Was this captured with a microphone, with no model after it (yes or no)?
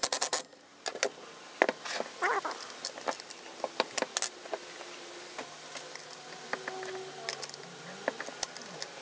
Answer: yes